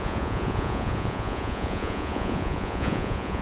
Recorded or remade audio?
remade